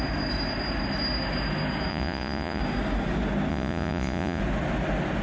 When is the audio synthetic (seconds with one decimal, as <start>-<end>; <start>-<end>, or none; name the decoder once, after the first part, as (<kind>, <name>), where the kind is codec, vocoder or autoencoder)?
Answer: 1.9-2.6 (vocoder, Vocos); 3.5-4.4